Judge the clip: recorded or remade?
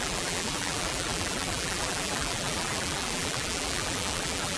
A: remade